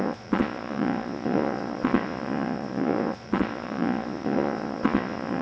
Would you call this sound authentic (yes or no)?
no